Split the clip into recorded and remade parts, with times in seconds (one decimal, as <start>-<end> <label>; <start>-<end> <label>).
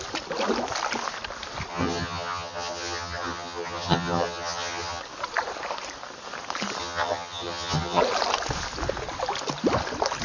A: 0.0-1.7 recorded; 1.7-5.0 remade; 5.0-6.8 recorded; 6.8-8.0 remade; 8.0-10.2 recorded